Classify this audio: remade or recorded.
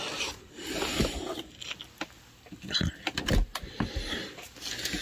recorded